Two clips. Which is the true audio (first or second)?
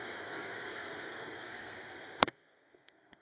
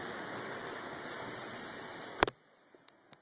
second